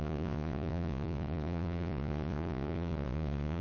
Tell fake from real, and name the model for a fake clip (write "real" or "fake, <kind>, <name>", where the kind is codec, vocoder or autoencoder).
fake, vocoder, Vocos